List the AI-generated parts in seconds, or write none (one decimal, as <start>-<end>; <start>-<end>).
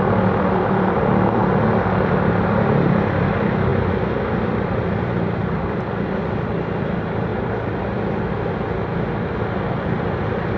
0.0-1.4; 2.3-3.7; 4.2-7.3; 9.7-10.6